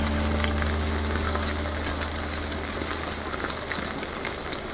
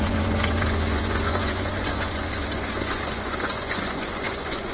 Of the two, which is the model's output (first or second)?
second